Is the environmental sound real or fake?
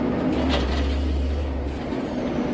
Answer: real